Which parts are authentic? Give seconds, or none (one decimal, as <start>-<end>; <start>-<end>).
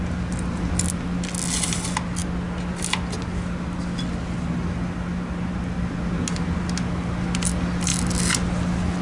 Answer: 0.0-9.0